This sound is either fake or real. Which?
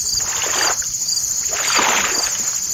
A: real